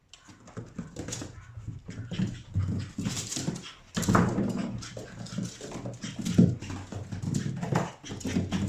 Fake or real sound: real